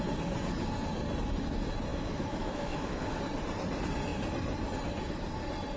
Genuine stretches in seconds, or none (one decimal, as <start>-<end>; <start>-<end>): 0.0-1.9; 3.2-5.8